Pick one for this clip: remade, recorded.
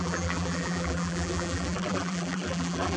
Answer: remade